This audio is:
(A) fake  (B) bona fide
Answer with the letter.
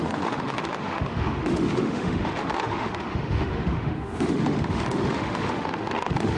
A